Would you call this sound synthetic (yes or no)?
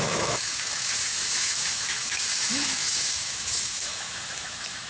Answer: yes